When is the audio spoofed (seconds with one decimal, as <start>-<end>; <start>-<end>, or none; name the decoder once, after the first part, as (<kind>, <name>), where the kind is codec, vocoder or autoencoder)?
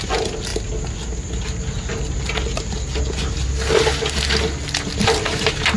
none